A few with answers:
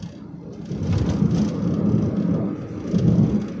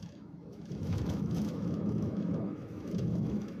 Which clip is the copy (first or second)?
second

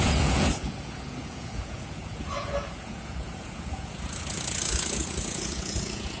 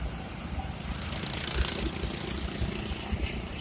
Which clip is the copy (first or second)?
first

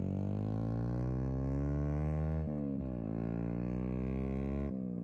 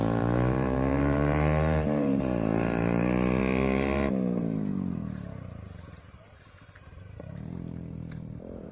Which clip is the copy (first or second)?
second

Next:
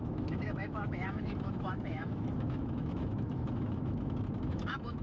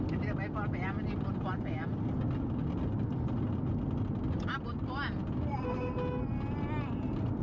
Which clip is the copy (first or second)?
first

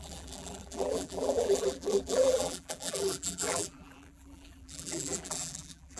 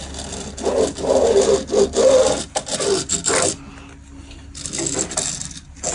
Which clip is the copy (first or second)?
first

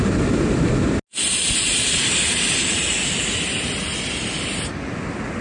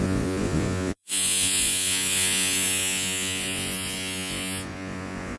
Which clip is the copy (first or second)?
second